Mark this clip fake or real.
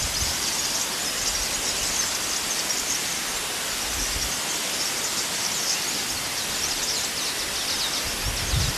real